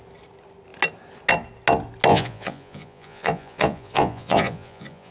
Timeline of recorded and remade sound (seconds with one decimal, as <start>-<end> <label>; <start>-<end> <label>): 0.0-2.1 recorded; 2.1-5.1 remade